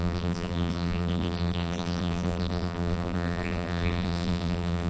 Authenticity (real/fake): fake